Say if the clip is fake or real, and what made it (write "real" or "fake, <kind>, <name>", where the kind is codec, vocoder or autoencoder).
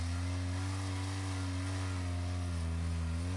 real